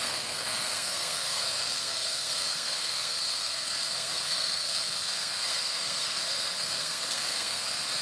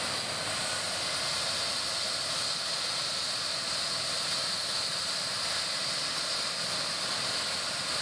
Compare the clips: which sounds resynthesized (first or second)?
first